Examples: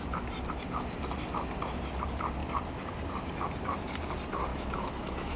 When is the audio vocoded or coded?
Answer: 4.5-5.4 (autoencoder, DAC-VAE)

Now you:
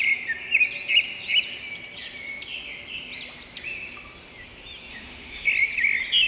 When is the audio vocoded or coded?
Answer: 4.9-5.5 (autoencoder, DAC-VAE)

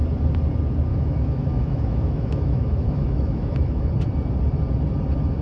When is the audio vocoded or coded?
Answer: 0.9-3.9 (autoencoder, DAC-VAE)

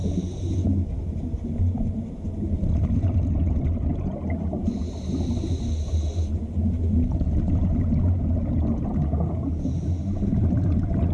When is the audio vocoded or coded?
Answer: none